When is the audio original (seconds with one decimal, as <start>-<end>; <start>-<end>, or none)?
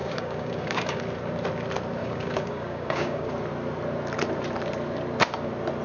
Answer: 1.0-2.0; 3.3-5.8